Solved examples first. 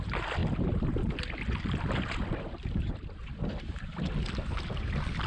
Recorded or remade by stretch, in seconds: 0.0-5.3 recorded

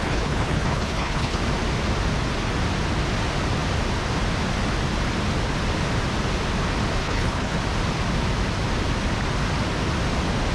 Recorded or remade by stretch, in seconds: 0.0-1.4 remade; 1.4-7.0 recorded; 7.0-7.6 remade; 7.6-10.5 recorded